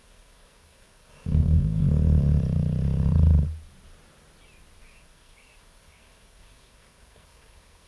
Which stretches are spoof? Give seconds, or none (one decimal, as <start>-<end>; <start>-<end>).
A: 0.0-1.8; 4.8-7.9